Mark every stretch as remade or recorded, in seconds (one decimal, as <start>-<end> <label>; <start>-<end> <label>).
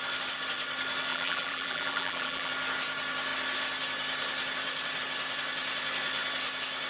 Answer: 0.0-1.1 recorded; 1.1-2.5 remade; 2.5-6.9 recorded